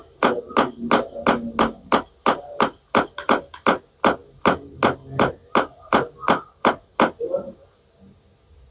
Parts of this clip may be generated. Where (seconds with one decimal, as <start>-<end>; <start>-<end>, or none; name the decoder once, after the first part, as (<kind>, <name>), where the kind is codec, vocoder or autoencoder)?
none